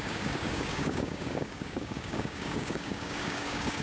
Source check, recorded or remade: remade